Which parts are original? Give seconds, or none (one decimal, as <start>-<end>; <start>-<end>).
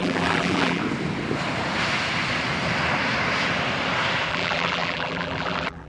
0.8-4.3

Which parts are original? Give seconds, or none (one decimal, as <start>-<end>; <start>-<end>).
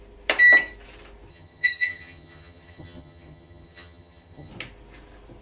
0.0-1.3; 4.5-5.4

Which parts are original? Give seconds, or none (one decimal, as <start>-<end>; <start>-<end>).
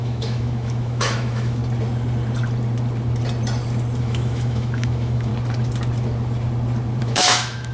1.6-4.0; 5.3-7.0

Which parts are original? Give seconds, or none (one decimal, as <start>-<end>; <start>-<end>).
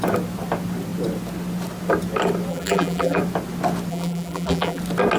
0.0-2.5; 3.2-3.9; 4.8-5.2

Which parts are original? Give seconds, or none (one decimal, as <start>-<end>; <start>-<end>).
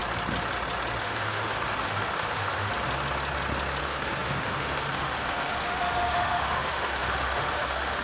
0.0-1.0; 2.7-3.8